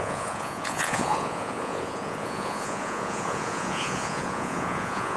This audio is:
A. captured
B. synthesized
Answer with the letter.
B